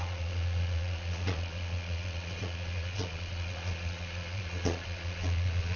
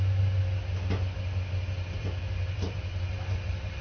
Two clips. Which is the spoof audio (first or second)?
first